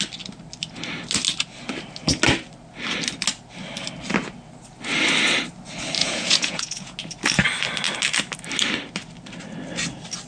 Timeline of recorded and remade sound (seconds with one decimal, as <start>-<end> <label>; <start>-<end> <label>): 0.0-6.0 recorded; 6.0-7.0 remade; 7.0-10.3 recorded

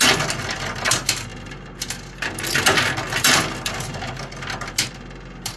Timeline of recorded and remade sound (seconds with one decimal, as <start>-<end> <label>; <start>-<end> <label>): 0.0-5.6 recorded

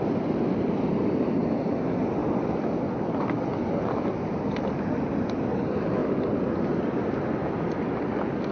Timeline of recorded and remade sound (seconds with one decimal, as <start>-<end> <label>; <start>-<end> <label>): 0.0-8.5 recorded